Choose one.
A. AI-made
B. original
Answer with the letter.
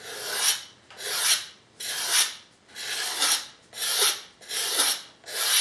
B